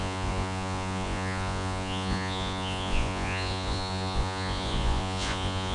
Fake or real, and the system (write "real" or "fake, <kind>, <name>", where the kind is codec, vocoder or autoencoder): fake, vocoder, Vocos